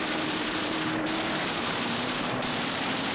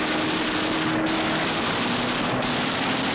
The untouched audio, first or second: second